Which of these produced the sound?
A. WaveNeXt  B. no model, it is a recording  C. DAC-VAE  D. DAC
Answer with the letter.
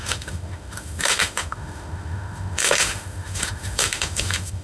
C